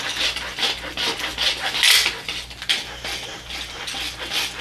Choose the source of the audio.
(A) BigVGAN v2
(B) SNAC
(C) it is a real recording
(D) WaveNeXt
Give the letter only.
C